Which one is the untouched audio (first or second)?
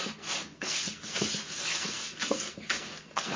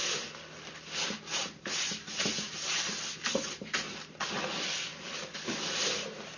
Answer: second